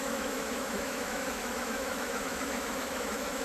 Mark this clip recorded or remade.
remade